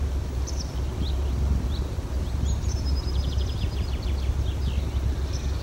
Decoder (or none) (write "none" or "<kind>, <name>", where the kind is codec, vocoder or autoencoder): none